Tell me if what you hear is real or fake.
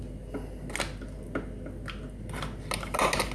real